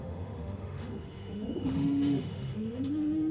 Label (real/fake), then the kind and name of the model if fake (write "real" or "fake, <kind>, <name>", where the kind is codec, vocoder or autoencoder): fake, autoencoder, DAC-VAE